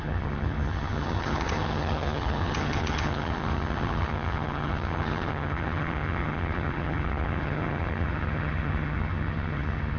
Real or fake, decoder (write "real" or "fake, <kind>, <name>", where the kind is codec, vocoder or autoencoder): fake, vocoder, HiFi-GAN